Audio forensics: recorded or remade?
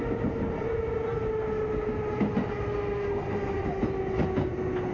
recorded